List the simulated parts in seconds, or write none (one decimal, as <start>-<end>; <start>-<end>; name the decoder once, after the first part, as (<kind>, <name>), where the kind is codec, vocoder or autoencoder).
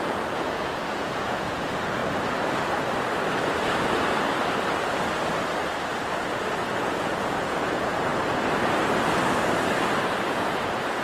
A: 0.0-2.0 (vocoder, Vocos); 6.2-8.1; 10.3-11.0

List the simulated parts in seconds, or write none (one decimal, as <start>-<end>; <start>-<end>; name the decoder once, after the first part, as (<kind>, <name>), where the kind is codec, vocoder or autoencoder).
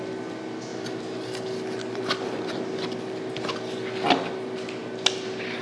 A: none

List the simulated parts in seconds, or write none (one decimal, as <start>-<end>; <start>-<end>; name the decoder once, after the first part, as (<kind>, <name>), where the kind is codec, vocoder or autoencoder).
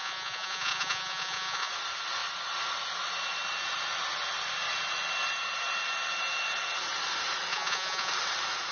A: 0.0-1.7 (vocoder, Vocos); 7.5-8.1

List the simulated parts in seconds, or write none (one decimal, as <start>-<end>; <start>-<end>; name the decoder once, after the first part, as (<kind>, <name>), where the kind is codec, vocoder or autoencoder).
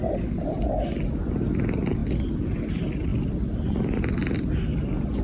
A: none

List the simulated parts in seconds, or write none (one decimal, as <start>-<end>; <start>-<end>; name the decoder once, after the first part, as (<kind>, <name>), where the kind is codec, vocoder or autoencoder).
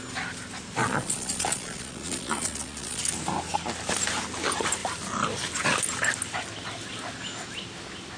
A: 0.8-3.0 (vocoder, Vocos)